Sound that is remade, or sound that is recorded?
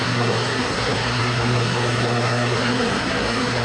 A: remade